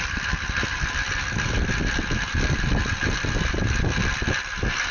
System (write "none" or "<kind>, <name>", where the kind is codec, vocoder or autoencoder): none